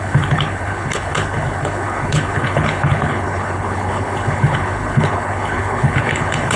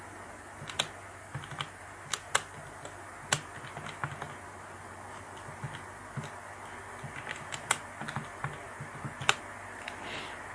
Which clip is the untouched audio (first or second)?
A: second